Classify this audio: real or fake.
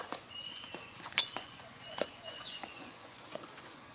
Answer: fake